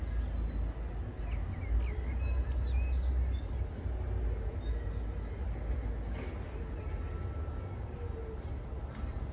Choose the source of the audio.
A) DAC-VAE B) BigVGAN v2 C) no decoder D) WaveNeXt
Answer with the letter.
C